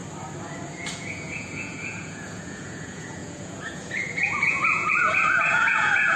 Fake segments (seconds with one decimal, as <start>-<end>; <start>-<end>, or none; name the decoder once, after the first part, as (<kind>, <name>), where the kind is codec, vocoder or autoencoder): 0.9-6.2 (vocoder, Vocos)